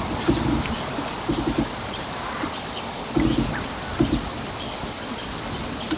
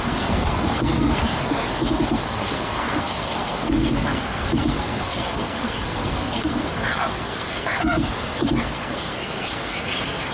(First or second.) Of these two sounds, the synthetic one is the second